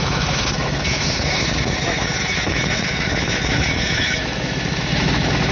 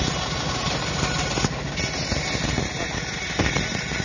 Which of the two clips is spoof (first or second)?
first